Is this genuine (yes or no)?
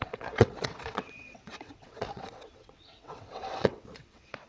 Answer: no